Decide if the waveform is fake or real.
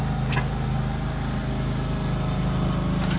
real